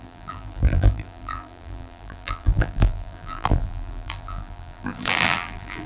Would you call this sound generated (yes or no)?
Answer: yes